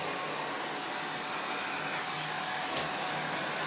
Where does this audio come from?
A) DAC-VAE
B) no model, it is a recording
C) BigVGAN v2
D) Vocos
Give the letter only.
B